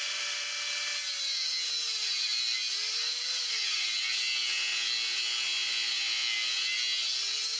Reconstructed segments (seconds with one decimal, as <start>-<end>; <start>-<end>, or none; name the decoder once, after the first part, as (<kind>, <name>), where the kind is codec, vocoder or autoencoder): none